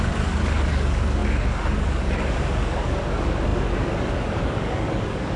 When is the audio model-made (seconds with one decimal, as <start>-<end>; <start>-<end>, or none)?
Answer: 0.0-5.4

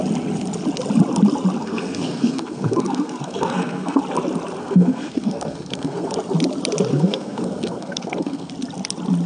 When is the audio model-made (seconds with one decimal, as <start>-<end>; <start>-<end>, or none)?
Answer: 1.6-4.0; 4.6-6.1; 6.9-8.5

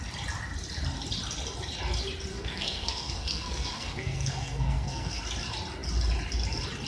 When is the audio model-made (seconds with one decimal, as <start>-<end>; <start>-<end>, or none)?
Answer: 2.3-5.2

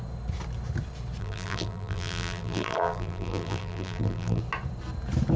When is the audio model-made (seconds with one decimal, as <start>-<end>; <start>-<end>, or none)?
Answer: 1.2-4.4

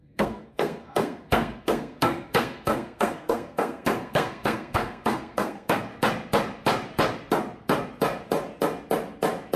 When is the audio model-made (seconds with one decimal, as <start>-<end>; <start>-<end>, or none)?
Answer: 0.0-5.9

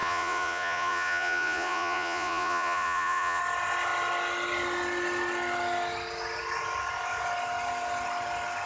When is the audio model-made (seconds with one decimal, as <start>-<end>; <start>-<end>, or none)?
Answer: 0.0-3.4